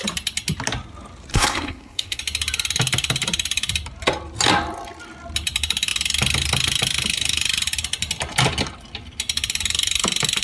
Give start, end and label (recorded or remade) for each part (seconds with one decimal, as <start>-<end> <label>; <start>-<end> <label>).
0.0-1.3 recorded; 1.3-2.2 remade; 2.2-10.4 recorded